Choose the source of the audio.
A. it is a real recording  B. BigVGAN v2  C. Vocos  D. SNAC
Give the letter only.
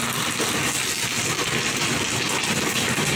A